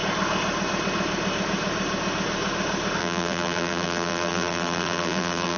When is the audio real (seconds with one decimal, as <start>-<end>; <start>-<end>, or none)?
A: 0.0-3.0